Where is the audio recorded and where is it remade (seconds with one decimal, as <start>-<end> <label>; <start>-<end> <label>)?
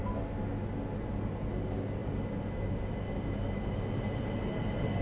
0.0-5.0 recorded